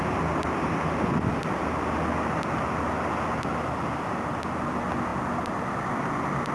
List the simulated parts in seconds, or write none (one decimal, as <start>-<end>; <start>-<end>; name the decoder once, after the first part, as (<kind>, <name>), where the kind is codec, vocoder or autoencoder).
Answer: none